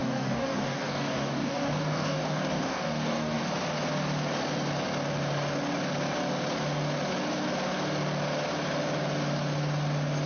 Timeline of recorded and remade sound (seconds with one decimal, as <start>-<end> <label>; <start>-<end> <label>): 0.0-3.4 remade; 3.4-10.3 recorded